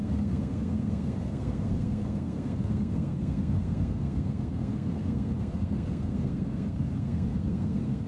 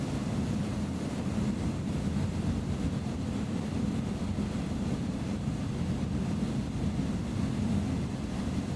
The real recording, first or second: second